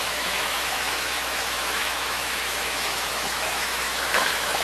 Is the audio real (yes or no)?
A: no